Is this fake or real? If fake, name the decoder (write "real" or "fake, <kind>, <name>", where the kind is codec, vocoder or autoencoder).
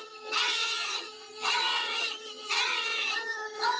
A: fake, vocoder, HiFi-GAN